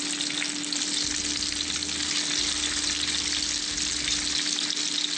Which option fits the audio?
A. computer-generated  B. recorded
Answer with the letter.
B